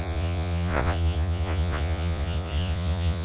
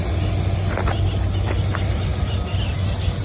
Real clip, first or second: second